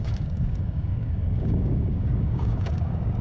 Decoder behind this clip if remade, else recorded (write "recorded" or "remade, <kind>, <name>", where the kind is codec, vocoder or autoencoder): remade, codec, DAC